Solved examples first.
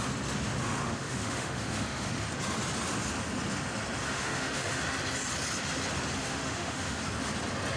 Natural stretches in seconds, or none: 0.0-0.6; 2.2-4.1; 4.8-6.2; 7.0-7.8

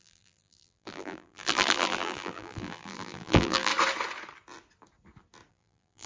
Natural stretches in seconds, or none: 3.7-5.5

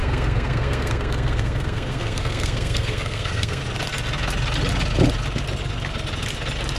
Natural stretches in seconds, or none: 3.6-6.8

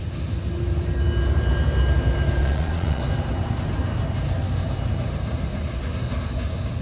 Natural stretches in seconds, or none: 0.0-2.4; 3.0-6.8

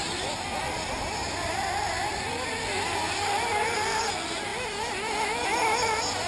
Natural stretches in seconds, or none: 2.5-3.5; 4.0-4.5

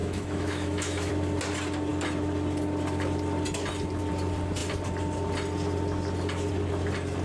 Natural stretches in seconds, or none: 1.1-7.2

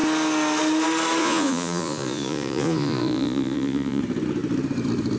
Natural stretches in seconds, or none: 0.0-1.2; 4.0-5.2

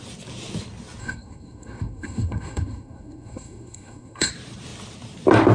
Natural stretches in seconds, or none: 0.0-1.0; 4.3-5.5